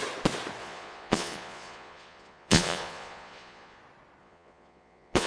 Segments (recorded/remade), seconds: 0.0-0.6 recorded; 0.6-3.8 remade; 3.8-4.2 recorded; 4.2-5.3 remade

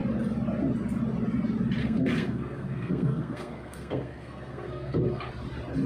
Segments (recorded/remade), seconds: 0.0-1.8 recorded; 1.8-5.3 remade; 5.3-5.9 recorded

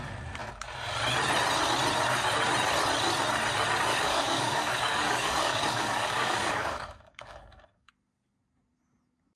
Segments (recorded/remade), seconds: 0.0-3.9 recorded; 3.9-7.9 remade; 7.9-9.4 recorded

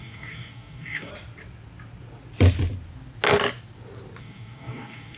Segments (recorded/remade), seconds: 0.0-1.1 remade; 1.1-4.2 recorded; 4.2-5.2 remade

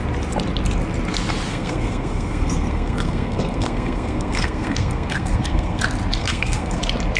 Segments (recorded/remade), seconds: 0.0-1.5 recorded; 1.5-5.8 remade; 5.8-6.2 recorded; 6.2-6.8 remade; 6.8-7.2 recorded

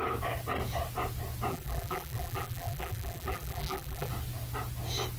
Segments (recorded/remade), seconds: 0.0-1.5 recorded; 1.5-4.1 remade; 4.1-5.2 recorded

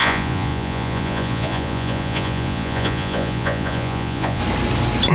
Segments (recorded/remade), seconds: 0.0-4.4 remade; 4.4-5.1 recorded